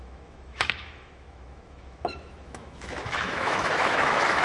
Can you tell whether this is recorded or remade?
remade